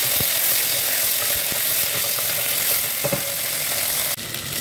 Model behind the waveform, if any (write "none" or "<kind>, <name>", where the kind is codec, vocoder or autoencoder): none